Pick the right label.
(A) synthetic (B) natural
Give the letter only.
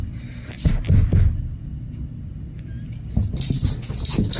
B